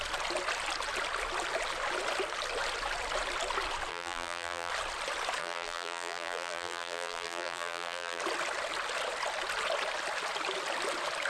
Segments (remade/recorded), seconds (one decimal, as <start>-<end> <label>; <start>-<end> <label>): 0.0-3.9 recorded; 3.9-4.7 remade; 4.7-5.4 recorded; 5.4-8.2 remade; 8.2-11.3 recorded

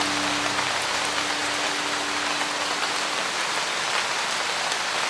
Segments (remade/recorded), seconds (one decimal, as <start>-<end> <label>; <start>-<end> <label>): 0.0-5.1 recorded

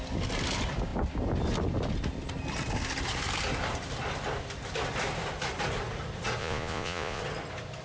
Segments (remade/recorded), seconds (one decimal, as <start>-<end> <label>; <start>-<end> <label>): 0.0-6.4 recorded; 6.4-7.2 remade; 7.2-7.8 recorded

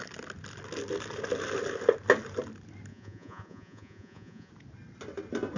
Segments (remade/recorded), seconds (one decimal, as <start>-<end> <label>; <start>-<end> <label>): 0.0-2.9 recorded; 2.9-4.5 remade; 4.5-5.6 recorded

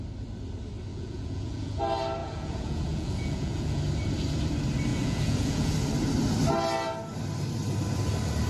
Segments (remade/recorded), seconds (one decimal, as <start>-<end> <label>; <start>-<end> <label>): 0.0-0.9 recorded; 0.9-1.8 remade; 1.8-2.2 recorded; 2.2-3.8 remade; 3.8-4.9 recorded; 4.9-5.7 remade; 5.7-8.5 recorded

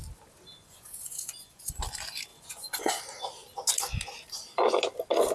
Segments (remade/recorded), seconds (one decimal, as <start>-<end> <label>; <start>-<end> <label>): 0.0-0.6 recorded; 0.6-1.8 remade; 1.8-2.3 recorded; 2.3-2.9 remade; 2.9-5.3 recorded

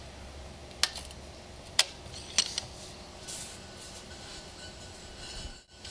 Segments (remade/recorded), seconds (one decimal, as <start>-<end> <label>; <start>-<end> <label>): 0.0-5.9 recorded

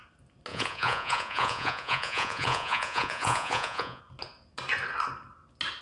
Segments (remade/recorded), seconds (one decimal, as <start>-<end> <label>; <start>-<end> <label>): 0.0-0.5 recorded; 0.5-4.0 remade; 4.0-5.8 recorded